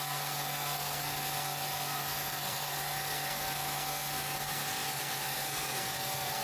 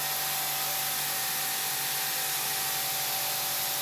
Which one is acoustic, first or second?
second